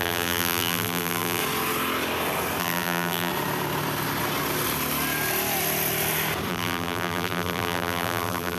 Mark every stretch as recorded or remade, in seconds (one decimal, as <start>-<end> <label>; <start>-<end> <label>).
0.0-1.4 remade; 1.4-2.6 recorded; 2.6-3.3 remade; 3.3-6.5 recorded; 6.5-8.6 remade